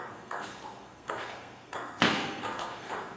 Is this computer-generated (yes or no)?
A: yes